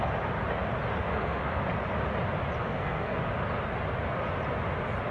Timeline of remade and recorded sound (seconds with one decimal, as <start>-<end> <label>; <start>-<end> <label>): 0.0-1.1 recorded; 1.1-1.6 remade; 1.6-2.6 recorded; 2.6-3.2 remade; 3.2-5.1 recorded